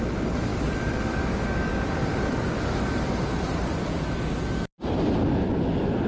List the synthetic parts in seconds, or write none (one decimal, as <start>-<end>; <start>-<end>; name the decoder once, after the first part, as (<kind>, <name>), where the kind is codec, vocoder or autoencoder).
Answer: 0.5-1.2 (vocoder, BigVGAN v2)